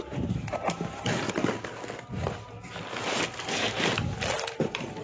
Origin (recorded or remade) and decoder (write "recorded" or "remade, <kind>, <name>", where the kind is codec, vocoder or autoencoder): recorded